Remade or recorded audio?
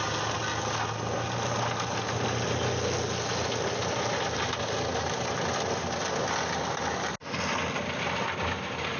recorded